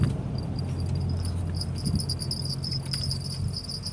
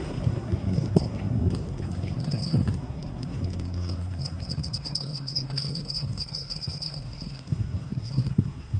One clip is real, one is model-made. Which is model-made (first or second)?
second